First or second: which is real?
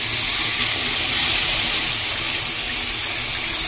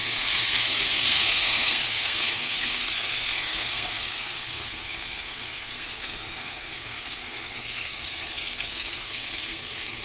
first